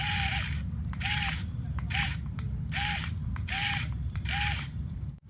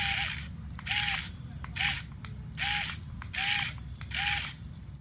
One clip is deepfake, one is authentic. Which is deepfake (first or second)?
first